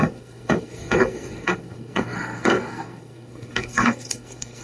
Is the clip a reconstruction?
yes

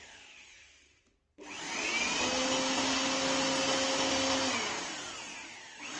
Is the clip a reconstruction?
no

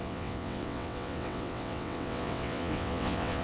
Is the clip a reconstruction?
yes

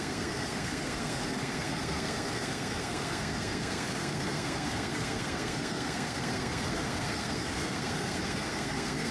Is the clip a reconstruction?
yes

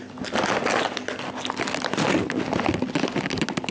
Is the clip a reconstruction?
no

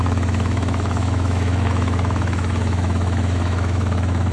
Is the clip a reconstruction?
yes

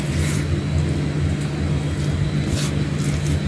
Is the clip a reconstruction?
no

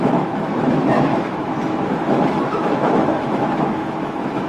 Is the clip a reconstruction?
yes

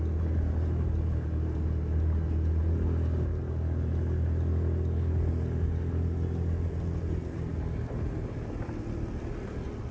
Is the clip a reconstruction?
no